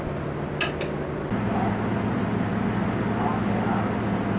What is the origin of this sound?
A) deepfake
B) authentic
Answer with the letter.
B